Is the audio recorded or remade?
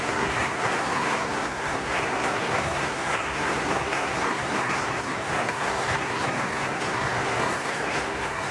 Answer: remade